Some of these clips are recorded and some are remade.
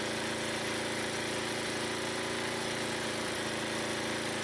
recorded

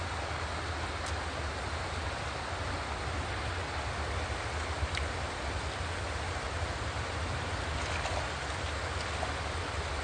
recorded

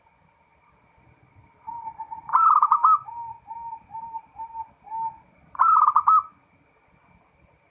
recorded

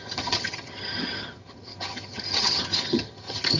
remade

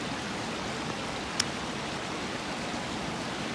recorded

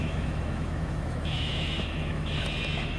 remade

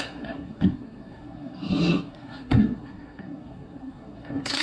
remade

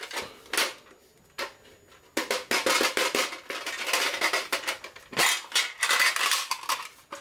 recorded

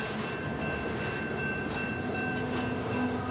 recorded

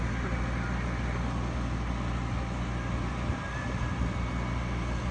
recorded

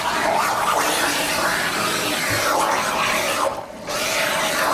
recorded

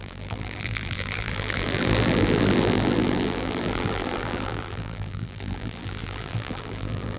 remade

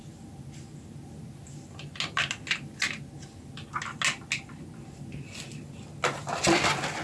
recorded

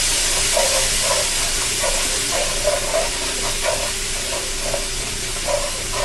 recorded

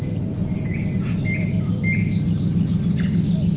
recorded